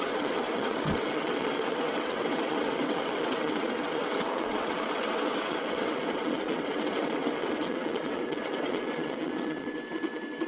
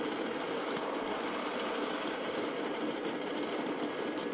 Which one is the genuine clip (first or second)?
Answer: second